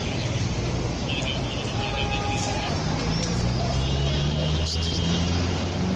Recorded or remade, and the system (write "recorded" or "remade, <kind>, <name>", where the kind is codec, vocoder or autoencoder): recorded